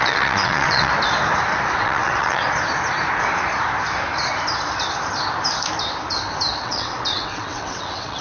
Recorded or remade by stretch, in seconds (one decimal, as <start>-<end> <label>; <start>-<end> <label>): 0.0-0.9 remade; 0.9-1.8 recorded; 1.8-2.4 remade; 2.4-6.6 recorded; 6.6-8.2 remade